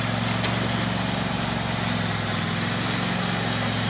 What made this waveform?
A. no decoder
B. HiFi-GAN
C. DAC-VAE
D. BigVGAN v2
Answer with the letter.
A